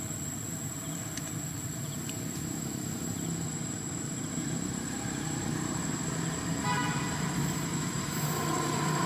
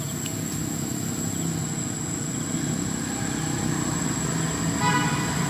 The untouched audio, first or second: second